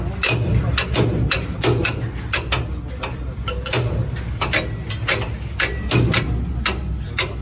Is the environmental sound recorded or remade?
recorded